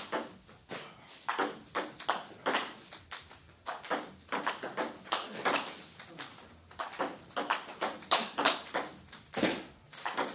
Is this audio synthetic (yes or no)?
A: no